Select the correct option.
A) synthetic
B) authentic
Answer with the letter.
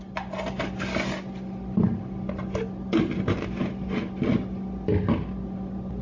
B